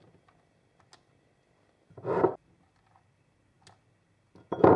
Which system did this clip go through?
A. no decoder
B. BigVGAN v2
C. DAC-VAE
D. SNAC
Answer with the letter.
A